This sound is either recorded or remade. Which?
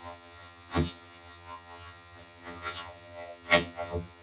remade